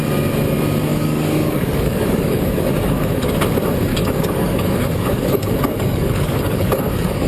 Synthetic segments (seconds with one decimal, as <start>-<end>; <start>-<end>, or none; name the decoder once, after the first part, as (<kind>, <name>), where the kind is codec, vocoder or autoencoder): 0.9-3.3 (codec, DAC); 3.9-7.3